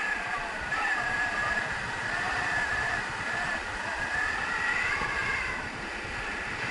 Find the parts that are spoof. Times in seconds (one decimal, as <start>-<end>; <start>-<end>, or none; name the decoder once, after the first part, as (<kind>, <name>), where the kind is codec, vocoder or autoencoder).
none